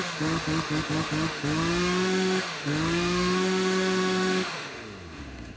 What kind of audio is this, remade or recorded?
remade